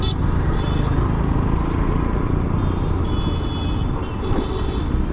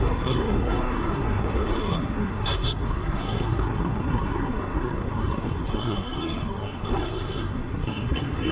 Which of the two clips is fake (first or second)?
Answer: second